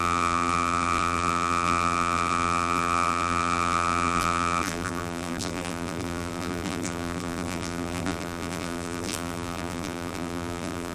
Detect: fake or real fake